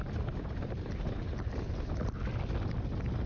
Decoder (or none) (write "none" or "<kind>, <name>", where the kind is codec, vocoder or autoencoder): none